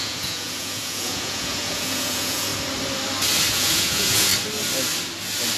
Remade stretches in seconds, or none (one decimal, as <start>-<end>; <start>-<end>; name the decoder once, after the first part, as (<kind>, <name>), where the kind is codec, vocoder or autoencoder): 0.0-2.5 (vocoder, Vocos); 3.5-4.3